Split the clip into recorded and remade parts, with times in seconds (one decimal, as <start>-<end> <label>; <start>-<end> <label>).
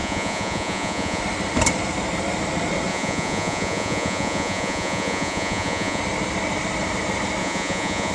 0.0-1.2 remade; 1.2-2.9 recorded; 2.9-6.0 remade; 6.0-7.4 recorded; 7.4-8.1 remade